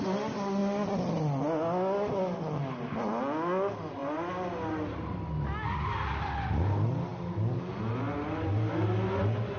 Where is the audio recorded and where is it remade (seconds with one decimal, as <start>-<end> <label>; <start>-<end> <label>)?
0.0-9.6 recorded